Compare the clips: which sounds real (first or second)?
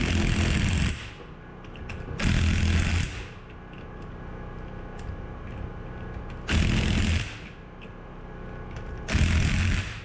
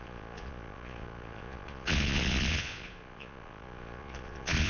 first